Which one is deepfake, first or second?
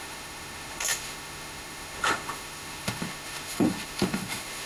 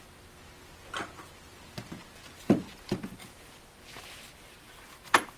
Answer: first